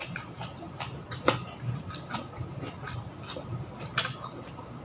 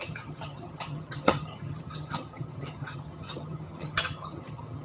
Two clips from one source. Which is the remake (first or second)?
second